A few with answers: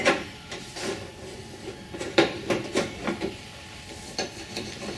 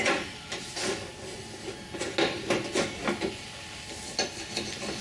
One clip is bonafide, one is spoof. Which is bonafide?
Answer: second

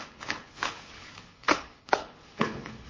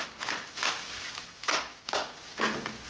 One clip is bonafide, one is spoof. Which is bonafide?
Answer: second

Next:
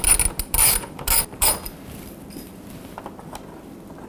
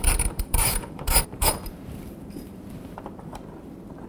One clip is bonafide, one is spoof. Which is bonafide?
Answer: first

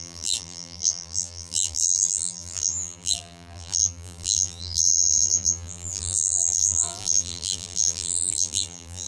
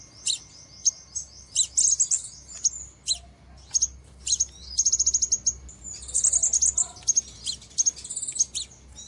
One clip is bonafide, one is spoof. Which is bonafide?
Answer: second